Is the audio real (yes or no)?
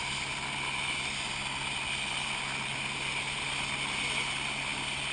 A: yes